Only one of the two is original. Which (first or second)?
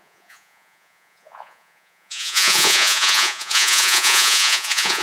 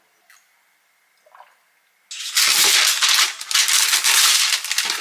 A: second